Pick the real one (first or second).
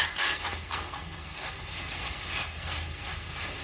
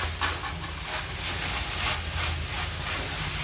second